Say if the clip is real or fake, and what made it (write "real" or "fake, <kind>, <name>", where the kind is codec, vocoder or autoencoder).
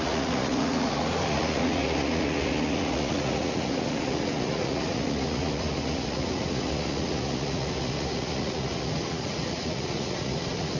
fake, vocoder, Vocos